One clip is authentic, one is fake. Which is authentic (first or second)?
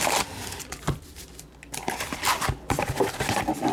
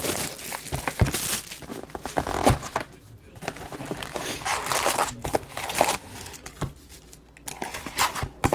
second